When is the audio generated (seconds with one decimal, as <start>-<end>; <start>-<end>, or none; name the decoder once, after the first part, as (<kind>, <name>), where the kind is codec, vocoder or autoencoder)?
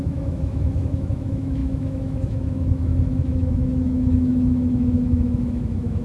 0.0-6.0 (autoencoder, DAC-VAE)